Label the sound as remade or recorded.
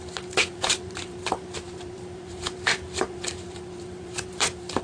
remade